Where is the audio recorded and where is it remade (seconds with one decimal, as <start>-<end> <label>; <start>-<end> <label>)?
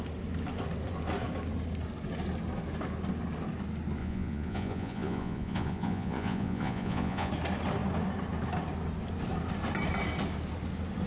0.0-4.0 recorded; 4.0-7.3 remade; 7.3-11.1 recorded